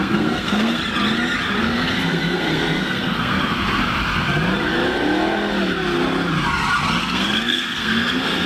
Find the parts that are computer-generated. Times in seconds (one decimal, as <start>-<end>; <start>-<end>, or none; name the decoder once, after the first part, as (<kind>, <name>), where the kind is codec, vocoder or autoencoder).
0.0-0.8 (codec, SNAC); 1.6-3.8; 7.0-8.5